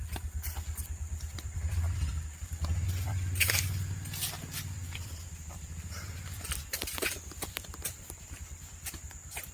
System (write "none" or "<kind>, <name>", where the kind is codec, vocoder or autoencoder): vocoder, BigVGAN v2